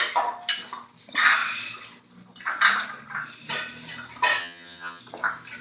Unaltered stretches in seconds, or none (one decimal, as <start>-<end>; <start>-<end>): 0.0-4.4; 5.0-5.6